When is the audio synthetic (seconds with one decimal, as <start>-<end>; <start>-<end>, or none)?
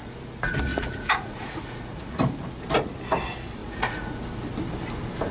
0.7-2.2; 3.6-4.1